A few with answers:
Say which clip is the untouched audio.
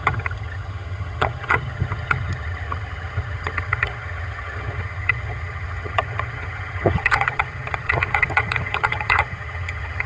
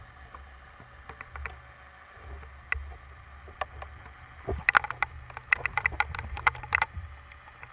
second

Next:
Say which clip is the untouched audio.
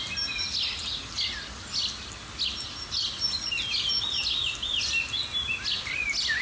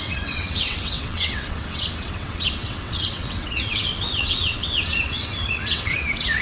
first